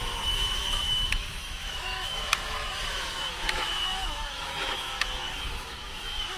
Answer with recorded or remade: remade